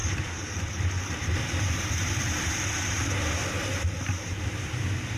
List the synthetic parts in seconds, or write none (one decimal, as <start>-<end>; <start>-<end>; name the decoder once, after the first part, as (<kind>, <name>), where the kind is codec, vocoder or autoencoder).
none